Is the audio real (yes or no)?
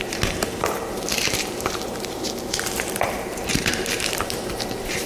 no